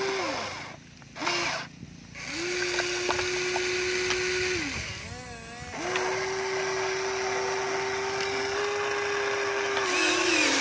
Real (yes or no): yes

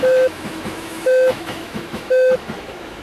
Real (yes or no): no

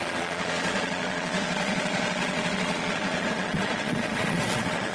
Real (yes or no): no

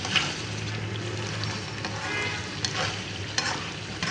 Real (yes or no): yes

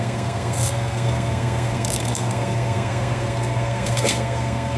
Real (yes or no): no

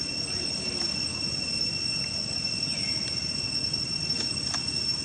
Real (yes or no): yes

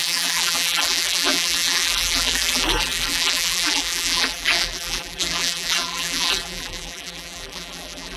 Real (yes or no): no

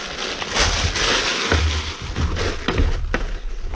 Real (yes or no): yes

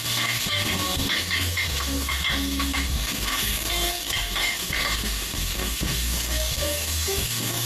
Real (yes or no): no